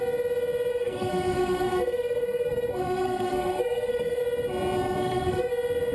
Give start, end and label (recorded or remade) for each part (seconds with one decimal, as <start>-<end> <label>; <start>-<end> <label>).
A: 0.0-0.7 recorded; 0.7-4.2 remade; 4.2-5.0 recorded; 5.0-5.5 remade; 5.5-5.9 recorded